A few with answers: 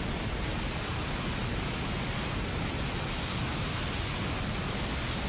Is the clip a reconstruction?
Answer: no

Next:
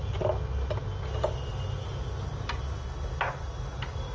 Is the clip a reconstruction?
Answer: no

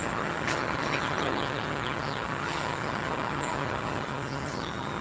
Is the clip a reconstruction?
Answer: yes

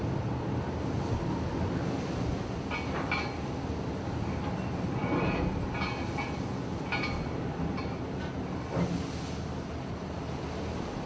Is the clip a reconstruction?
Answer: no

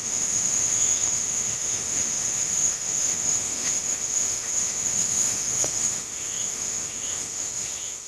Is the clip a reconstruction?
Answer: yes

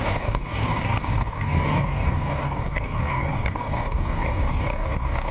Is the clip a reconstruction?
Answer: yes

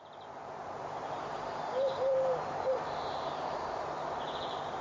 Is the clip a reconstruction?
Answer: yes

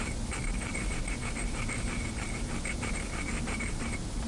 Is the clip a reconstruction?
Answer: yes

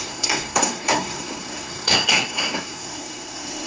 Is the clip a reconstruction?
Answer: yes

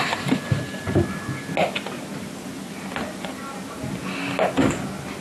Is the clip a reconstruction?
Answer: no